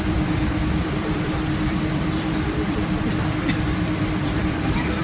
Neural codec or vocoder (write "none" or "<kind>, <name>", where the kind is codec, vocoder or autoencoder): vocoder, BigVGAN v2